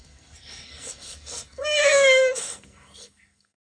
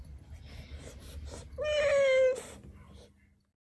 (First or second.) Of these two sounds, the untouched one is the second